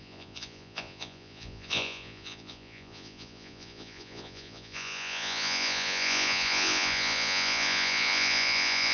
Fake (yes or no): yes